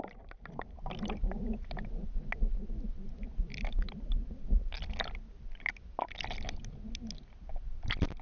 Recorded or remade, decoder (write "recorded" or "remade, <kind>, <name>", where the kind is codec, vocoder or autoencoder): recorded